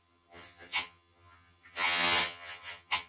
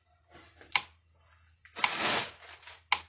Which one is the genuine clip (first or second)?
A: second